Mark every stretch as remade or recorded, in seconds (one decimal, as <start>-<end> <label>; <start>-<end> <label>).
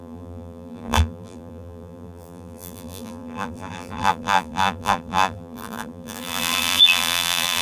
0.0-7.6 remade